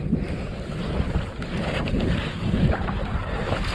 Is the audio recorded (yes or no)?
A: no